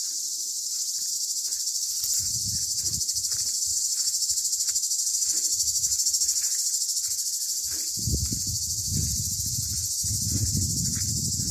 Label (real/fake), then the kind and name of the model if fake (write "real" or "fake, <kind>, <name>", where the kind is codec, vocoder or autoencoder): real